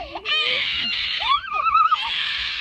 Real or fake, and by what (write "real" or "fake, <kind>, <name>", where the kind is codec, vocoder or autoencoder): fake, autoencoder, DAC-VAE